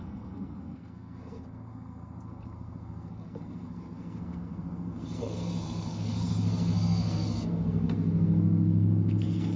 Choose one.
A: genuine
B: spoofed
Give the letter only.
B